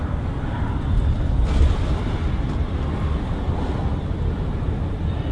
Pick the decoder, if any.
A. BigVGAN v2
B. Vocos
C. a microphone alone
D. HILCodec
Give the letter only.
C